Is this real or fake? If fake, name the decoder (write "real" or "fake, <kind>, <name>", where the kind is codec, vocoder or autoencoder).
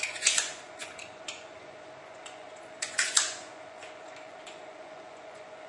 fake, vocoder, Vocos